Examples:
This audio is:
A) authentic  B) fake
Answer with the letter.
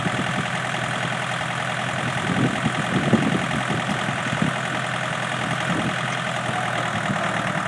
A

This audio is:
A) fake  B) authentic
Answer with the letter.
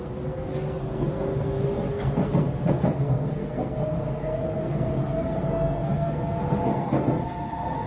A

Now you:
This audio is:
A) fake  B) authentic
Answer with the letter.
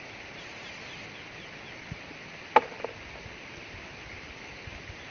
B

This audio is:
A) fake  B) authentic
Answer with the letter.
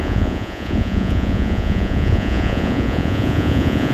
A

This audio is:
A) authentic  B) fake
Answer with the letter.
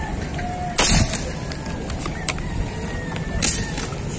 A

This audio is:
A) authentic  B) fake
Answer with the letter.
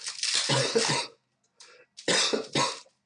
A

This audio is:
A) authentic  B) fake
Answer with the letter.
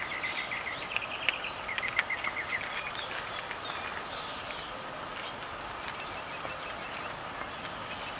A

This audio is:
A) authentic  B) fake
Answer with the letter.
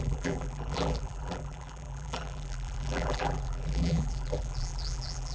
B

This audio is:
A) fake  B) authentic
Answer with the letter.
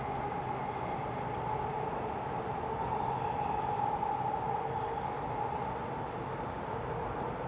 B